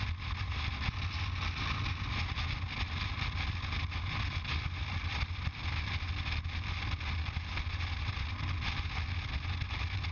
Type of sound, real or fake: real